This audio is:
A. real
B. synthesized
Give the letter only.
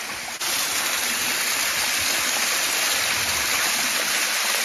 A